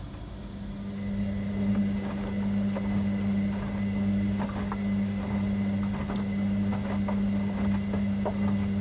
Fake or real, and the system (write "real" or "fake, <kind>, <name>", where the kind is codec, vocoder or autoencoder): real